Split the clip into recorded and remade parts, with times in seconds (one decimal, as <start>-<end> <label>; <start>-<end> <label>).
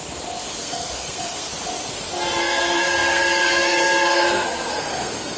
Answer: 0.0-0.6 recorded; 0.6-1.5 remade; 1.5-2.4 recorded; 2.4-5.4 remade